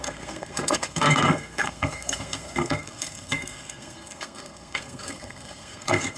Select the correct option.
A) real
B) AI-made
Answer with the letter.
B